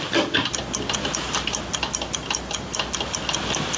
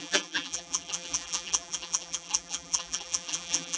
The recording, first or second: first